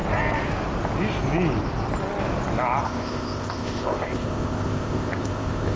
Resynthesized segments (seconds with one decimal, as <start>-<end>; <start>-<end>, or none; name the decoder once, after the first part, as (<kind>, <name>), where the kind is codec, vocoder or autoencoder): 2.8-5.8 (codec, ZipCodec)